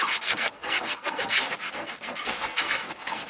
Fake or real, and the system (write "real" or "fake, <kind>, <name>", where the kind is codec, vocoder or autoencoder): fake, codec, SNAC